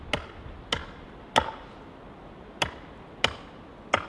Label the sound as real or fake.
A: real